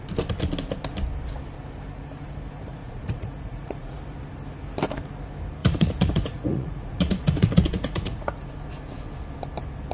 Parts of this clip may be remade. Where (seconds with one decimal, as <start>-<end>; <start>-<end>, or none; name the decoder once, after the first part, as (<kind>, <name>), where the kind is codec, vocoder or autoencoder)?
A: 2.7-4.0 (vocoder, Vocos); 5.6-8.5